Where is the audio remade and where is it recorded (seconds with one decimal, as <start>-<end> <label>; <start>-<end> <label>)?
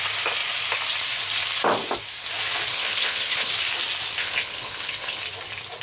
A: 0.0-2.7 recorded; 2.7-3.5 remade; 3.5-4.2 recorded; 4.2-5.2 remade; 5.2-5.8 recorded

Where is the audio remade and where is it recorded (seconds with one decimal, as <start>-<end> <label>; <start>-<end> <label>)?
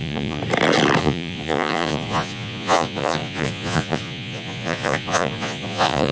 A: 0.0-0.4 remade; 0.4-1.0 recorded; 1.0-6.1 remade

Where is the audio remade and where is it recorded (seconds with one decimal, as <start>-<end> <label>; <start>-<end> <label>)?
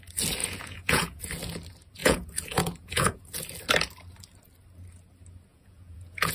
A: 0.0-0.4 recorded; 0.4-1.2 remade; 1.2-2.0 recorded; 2.0-3.4 remade; 3.4-5.5 recorded; 5.5-6.3 remade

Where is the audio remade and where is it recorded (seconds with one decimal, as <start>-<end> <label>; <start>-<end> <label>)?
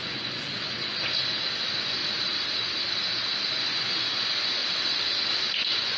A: 0.0-2.0 remade; 2.0-3.6 recorded; 3.6-4.6 remade; 4.6-5.5 recorded; 5.5-6.0 remade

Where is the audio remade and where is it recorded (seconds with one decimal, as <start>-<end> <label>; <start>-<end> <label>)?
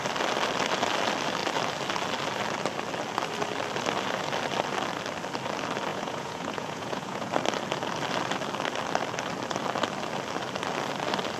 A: 0.0-5.9 recorded; 5.9-7.3 remade; 7.3-11.4 recorded